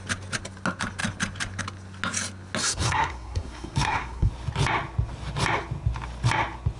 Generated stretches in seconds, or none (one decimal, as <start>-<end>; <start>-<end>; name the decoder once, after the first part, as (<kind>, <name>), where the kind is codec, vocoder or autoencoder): 2.6-4.3 (codec, SNAC)